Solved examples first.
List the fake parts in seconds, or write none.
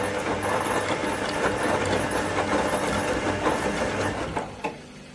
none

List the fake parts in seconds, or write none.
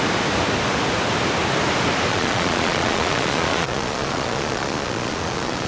2.1-5.7 (vocoder, Vocos)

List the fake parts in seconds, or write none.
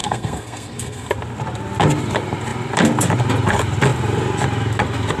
0.0-1.1 (codec, SNAC)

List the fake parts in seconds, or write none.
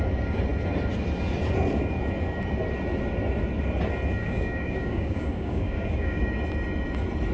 4.2-6.2 (codec, DAC)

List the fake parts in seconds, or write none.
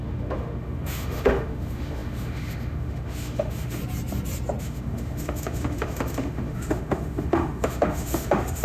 0.0-3.8 (autoencoder, DAC-VAE); 4.6-8.6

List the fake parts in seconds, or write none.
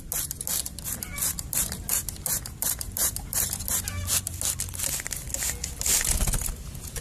none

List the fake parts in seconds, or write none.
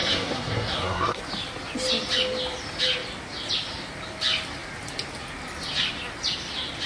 0.0-1.2 (codec, SNAC)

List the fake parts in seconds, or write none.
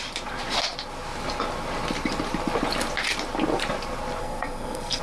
4.2-5.0 (codec, SNAC)